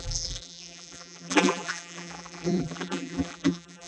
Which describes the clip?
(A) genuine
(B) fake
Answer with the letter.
B